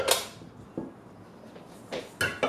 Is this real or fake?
real